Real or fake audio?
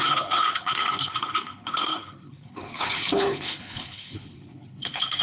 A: fake